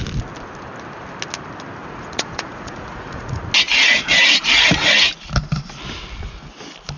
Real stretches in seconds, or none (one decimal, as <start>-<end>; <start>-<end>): 0.0-1.8; 3.4-7.0